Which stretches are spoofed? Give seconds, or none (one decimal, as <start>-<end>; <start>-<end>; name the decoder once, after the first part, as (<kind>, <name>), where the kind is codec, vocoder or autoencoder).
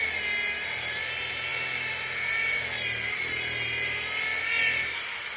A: none